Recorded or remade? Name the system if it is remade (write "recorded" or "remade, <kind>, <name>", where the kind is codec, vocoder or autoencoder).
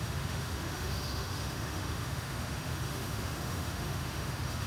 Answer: remade, autoencoder, DAC-VAE